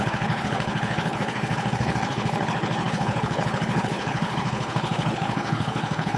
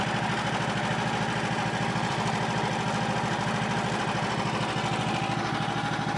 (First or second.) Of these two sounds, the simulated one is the first